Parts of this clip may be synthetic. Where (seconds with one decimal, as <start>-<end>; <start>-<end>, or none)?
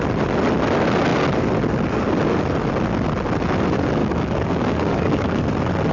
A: 4.0-5.4